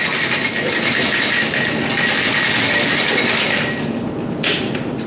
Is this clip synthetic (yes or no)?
no